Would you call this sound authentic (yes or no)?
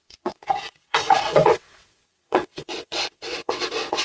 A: no